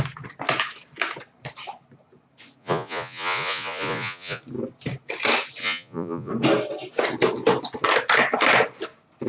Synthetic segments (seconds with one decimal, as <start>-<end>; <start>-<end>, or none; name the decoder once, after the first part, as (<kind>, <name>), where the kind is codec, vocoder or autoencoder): 2.6-4.4 (vocoder, Vocos); 5.6-6.3